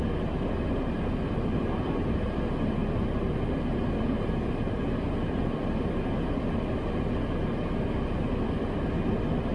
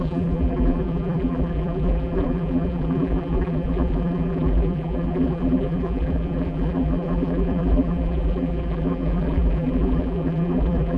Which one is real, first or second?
first